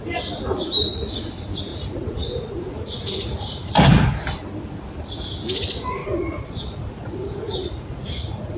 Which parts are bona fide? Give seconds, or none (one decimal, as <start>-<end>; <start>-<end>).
0.0-1.7; 3.7-6.0